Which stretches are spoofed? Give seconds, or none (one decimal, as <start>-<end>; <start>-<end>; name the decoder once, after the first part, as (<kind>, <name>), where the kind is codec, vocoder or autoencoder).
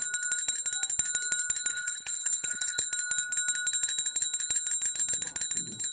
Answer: 1.7-2.8 (codec, HILCodec)